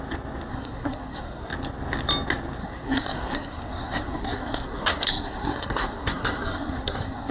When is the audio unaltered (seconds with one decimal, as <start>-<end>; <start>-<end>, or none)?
0.0-0.5; 1.5-2.6